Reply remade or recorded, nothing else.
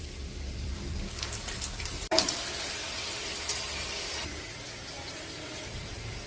remade